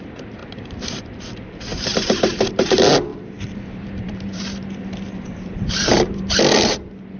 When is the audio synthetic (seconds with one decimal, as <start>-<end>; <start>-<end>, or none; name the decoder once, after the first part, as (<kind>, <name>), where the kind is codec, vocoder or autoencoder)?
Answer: 0.4-1.0 (vocoder, BigVGAN v2); 1.7-2.7; 3.1-6.4